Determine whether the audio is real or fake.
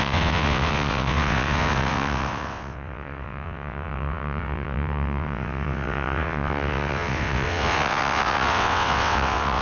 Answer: fake